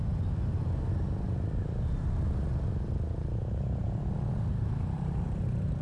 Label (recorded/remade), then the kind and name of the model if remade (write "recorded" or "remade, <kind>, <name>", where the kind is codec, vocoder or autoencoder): recorded